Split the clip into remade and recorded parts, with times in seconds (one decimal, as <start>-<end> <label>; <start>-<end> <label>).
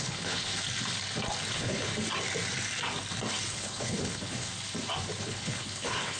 0.0-0.5 remade; 0.5-1.5 recorded; 1.5-1.9 remade; 1.9-3.5 recorded; 3.5-4.5 remade; 4.5-5.2 recorded; 5.2-6.2 remade